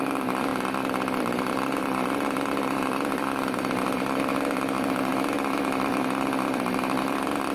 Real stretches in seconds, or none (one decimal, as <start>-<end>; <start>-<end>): 0.5-1.2; 5.1-5.9